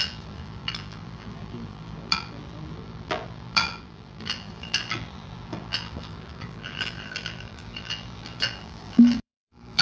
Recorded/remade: remade